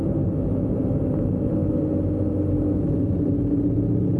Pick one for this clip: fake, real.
real